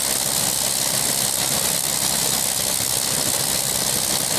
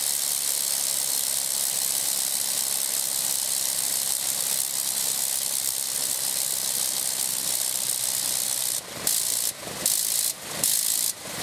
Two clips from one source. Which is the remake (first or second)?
second